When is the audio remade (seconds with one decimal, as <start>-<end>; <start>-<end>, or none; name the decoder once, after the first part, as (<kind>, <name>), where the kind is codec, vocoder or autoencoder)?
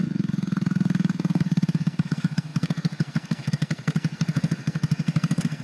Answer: 0.0-5.6 (codec, SNAC)